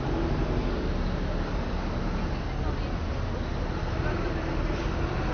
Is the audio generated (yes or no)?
no